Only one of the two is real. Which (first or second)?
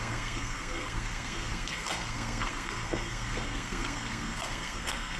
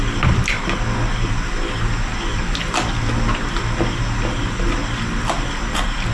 second